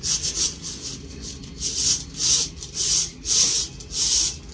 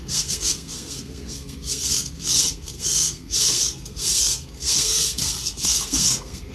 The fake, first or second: second